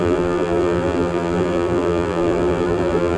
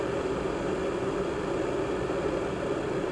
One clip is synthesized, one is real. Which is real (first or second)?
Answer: second